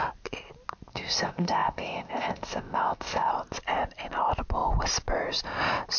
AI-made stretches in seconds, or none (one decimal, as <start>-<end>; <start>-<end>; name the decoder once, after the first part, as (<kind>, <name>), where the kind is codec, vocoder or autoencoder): 0.9-3.3 (codec, ZipCodec)